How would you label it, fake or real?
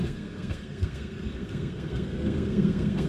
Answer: fake